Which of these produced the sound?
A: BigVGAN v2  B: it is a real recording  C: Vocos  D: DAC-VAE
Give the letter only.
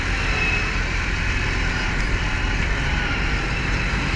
A